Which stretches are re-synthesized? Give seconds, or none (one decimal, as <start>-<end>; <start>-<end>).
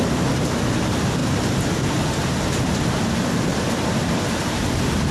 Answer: none